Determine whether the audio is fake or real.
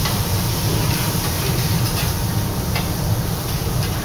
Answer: fake